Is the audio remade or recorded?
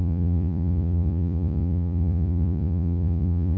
remade